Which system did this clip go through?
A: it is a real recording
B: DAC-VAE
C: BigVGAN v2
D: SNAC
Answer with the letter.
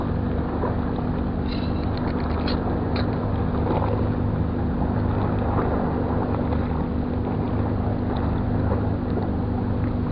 A